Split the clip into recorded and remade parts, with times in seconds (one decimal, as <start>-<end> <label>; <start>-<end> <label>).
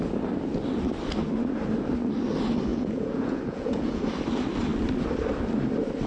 0.0-2.7 recorded; 2.7-4.0 remade; 4.0-6.1 recorded